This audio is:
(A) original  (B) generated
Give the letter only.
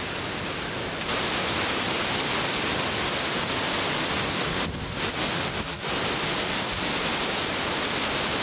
A